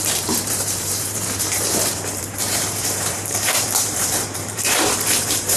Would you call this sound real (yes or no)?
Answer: no